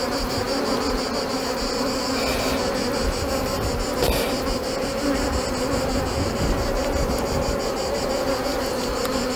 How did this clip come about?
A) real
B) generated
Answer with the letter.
A